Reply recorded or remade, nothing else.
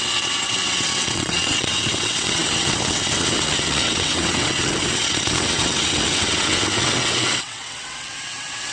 remade